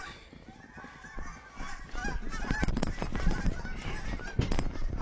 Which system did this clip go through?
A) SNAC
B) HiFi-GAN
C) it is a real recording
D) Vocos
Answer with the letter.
C